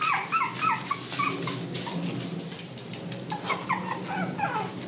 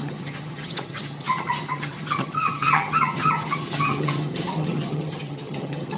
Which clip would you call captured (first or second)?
first